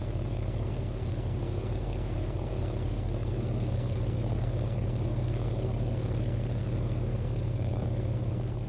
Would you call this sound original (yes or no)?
no